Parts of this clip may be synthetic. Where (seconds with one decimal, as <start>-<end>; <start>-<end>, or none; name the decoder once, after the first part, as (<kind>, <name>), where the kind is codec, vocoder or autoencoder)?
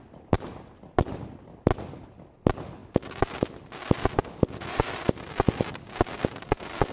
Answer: none